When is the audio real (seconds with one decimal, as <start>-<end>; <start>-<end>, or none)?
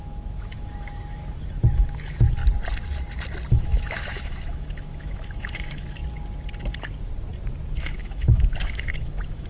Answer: 1.2-1.9; 2.4-3.5; 6.0-7.7